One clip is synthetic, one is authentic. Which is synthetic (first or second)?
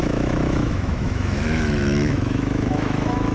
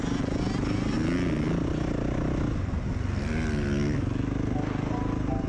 first